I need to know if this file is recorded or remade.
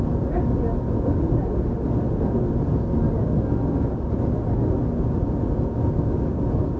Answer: recorded